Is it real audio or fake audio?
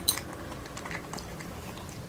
real